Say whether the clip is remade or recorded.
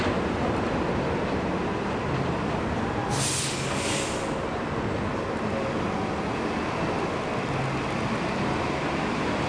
recorded